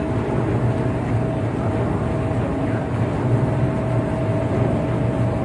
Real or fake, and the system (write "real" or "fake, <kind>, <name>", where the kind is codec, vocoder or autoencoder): real